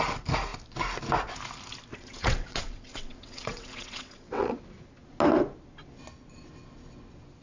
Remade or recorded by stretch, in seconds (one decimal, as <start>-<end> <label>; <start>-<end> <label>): 0.0-1.9 recorded; 1.9-4.6 remade; 4.6-7.4 recorded